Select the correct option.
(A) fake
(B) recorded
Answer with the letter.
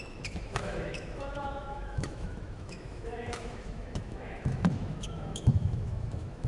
A